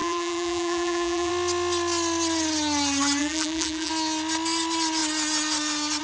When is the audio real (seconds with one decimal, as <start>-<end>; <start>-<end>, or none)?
1.3-3.2; 3.9-6.0